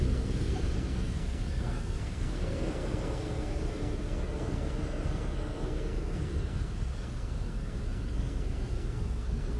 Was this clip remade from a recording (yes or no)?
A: yes